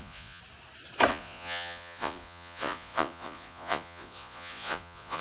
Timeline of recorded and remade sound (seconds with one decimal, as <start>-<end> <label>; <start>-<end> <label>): 0.0-0.4 remade; 0.4-1.1 recorded; 1.1-5.2 remade